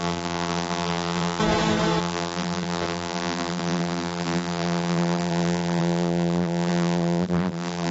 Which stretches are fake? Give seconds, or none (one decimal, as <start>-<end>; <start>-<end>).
0.0-1.4; 2.0-7.9